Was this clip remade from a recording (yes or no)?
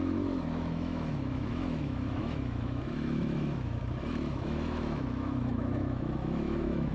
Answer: yes